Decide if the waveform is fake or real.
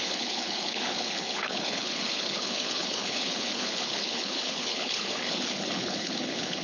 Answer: fake